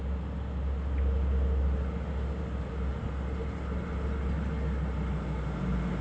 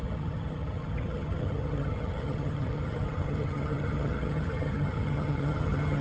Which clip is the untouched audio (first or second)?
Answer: first